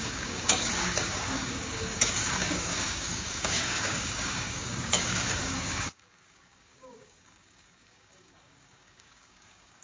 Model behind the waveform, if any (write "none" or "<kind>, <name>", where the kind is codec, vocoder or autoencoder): codec, DAC